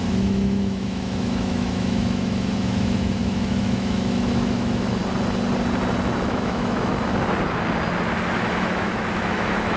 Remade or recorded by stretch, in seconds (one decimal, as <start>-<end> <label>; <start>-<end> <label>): 0.0-5.0 remade; 5.0-6.3 recorded; 6.3-6.9 remade; 6.9-8.3 recorded; 8.3-9.8 remade